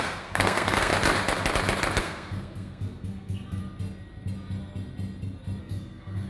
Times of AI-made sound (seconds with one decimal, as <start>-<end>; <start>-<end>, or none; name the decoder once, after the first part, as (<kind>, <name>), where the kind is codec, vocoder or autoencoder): 0.0-0.9 (codec, SNAC); 2.0-3.6; 5.6-6.3